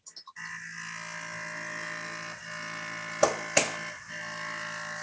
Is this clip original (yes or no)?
yes